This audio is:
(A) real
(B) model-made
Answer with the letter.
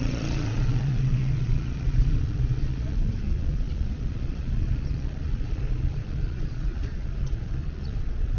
B